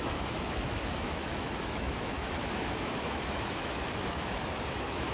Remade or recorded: remade